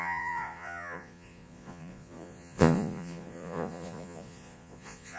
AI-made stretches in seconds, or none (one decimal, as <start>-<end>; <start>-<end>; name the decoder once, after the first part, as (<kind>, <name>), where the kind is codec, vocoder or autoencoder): 0.0-5.2 (vocoder, Vocos)